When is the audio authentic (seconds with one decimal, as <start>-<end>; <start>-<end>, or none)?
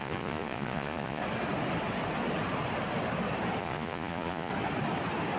1.2-3.6; 4.5-5.4